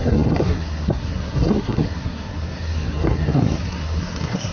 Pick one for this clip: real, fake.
fake